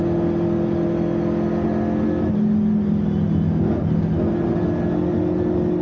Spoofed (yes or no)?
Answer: no